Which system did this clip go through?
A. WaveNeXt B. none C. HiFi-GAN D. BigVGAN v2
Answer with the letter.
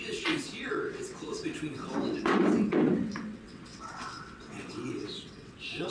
A